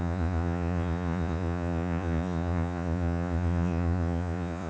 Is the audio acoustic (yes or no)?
no